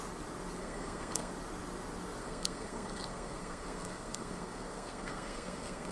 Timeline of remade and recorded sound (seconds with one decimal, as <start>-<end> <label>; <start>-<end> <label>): 0.0-0.6 recorded; 0.6-1.3 remade; 1.3-2.2 recorded; 2.2-5.9 remade